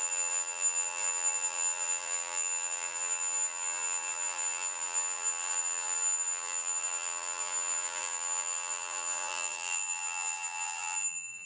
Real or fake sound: fake